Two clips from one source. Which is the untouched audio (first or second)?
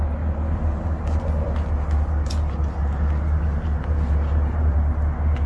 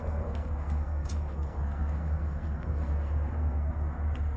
first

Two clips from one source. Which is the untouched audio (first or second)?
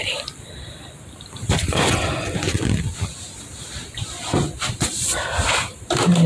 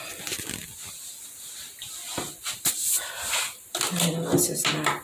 second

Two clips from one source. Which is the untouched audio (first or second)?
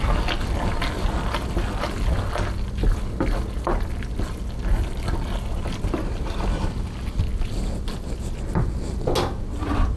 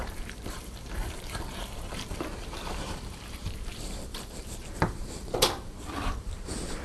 first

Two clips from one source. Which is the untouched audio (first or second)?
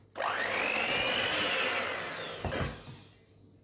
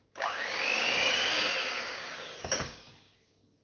first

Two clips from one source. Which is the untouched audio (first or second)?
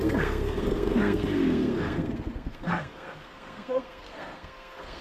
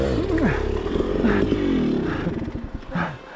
second